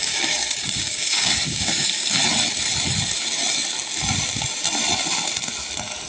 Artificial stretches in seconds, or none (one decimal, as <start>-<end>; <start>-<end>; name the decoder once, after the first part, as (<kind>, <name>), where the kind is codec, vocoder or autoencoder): 0.0-2.2 (codec, DAC)